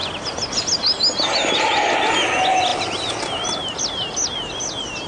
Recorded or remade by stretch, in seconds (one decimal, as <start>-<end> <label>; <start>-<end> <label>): 0.0-5.1 recorded

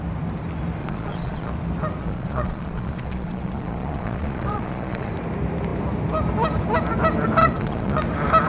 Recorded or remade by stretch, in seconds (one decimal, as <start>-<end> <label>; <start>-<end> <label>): 0.0-0.8 recorded; 0.8-1.5 remade; 1.5-2.0 recorded; 2.0-5.1 remade; 5.1-7.4 recorded; 7.4-8.0 remade; 8.0-8.5 recorded

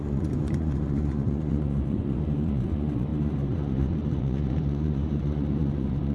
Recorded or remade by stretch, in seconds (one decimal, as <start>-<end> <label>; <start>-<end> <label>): 0.0-6.1 remade

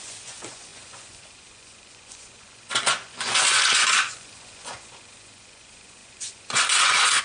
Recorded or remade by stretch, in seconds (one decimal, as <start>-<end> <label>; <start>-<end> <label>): 0.0-7.2 remade

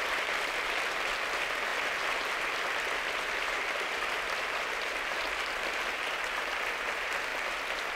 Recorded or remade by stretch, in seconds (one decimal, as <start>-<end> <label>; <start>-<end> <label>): 0.0-8.0 recorded

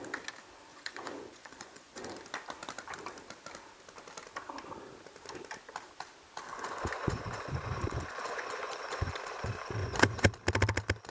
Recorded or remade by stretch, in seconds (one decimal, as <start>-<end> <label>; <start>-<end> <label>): 0.0-0.7 recorded; 0.7-2.1 remade; 2.1-6.5 recorded; 6.5-9.1 remade; 9.1-9.8 recorded; 9.8-10.3 remade; 10.3-11.1 recorded

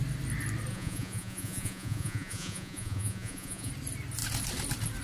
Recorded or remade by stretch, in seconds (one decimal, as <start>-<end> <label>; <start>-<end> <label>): 0.0-0.7 recorded; 0.7-3.7 remade; 3.7-5.0 recorded

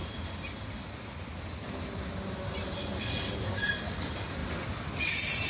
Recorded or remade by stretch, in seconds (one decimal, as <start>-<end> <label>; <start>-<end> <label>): 0.0-5.5 recorded